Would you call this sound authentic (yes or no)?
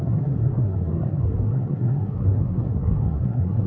no